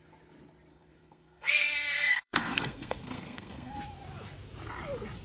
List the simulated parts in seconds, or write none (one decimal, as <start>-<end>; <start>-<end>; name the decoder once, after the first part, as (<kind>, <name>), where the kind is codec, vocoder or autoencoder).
0.7-3.8 (codec, SNAC)